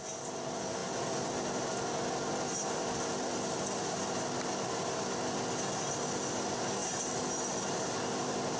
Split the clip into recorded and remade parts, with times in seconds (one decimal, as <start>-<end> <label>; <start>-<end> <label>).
0.0-8.6 recorded